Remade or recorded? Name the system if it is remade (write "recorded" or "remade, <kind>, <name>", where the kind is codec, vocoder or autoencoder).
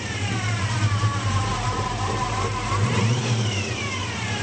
remade, vocoder, BigVGAN v2